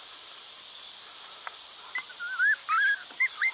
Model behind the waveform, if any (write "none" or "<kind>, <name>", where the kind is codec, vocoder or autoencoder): none